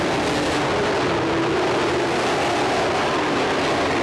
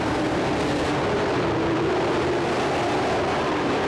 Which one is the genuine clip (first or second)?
first